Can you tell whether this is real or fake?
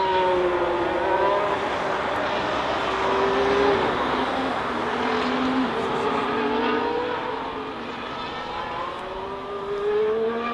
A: real